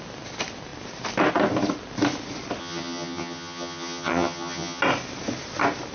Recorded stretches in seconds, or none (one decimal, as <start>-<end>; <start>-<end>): 0.0-2.6; 4.8-5.9